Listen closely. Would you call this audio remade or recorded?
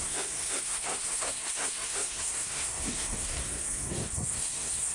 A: remade